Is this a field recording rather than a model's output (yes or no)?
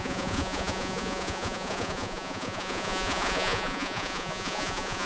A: no